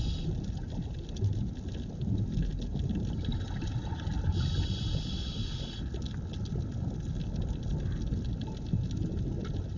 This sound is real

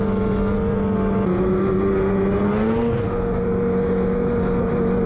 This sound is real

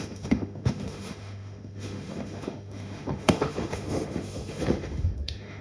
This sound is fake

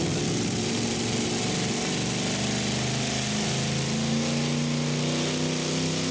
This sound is real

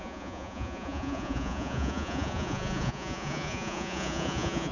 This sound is fake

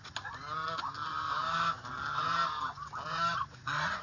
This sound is real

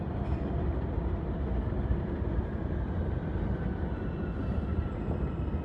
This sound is real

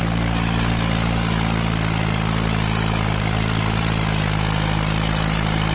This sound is real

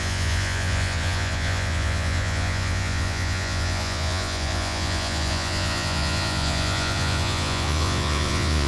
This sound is fake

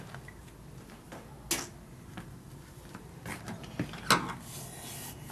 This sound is real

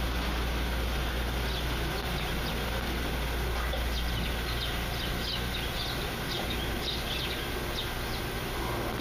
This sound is real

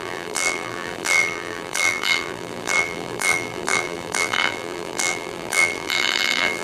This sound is fake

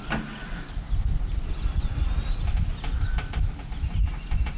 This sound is real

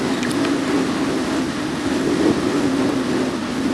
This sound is real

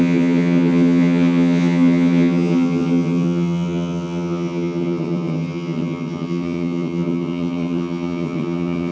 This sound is fake